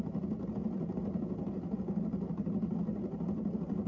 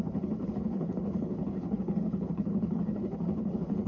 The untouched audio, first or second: first